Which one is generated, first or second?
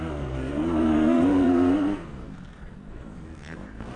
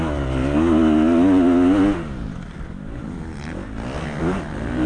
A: first